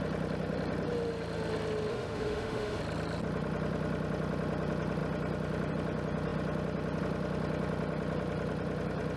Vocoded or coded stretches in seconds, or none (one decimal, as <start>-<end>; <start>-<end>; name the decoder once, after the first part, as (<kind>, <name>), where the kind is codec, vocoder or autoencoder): 1.9-2.8 (autoencoder, DAC-VAE)